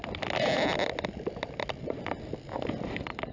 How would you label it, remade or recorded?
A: recorded